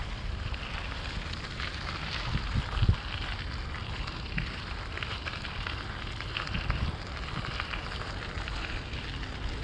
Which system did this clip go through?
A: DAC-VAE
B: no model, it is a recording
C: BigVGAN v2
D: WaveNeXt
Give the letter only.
B